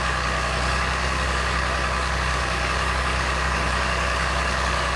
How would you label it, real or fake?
fake